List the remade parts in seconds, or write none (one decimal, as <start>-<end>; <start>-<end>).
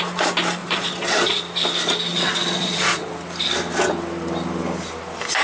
0.6-1.4; 2.1-3.1